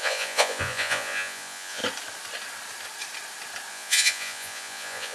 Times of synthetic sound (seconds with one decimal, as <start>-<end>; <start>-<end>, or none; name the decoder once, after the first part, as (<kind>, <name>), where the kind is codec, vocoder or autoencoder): 0.0-1.8 (vocoder, Vocos); 3.7-5.1